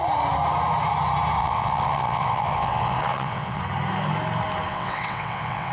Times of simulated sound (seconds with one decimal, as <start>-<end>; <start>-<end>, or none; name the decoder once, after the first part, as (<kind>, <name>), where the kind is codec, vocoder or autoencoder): 1.4-3.6 (vocoder, WaveNeXt); 4.7-5.7